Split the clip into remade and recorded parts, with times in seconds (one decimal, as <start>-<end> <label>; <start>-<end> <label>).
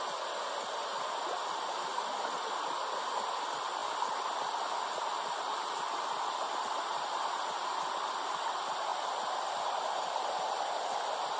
0.0-0.9 recorded; 0.9-2.3 remade; 2.3-11.4 recorded